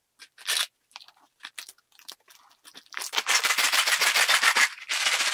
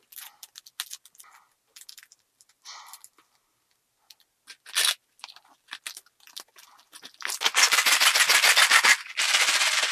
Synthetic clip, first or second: first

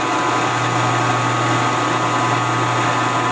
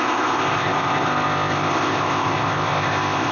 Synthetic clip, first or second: second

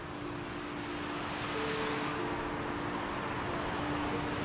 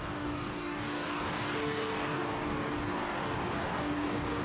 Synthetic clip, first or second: second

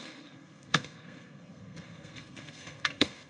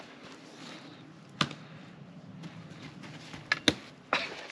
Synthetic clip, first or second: first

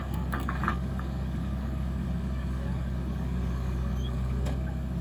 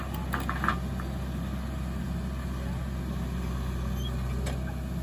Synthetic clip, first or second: first